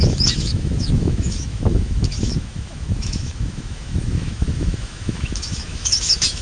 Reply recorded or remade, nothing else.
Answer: remade